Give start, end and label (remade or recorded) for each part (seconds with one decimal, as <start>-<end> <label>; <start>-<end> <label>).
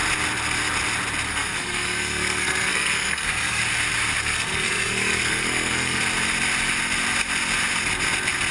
0.0-1.3 recorded; 1.3-3.6 remade; 3.6-4.2 recorded; 4.2-6.0 remade; 6.0-8.5 recorded